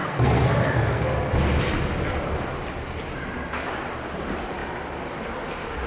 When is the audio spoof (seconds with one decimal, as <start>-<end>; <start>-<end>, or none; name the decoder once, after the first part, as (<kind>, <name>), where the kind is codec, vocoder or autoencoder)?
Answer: 0.0-1.1 (codec, SNAC)